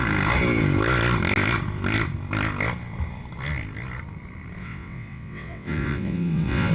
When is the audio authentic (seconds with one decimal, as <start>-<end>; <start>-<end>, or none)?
0.0-4.6